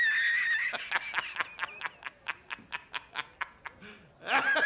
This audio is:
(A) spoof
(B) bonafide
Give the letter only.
B